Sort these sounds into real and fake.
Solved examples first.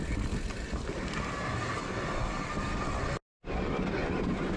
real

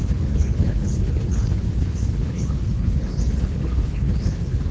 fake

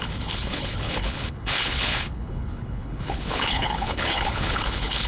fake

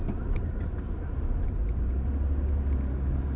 real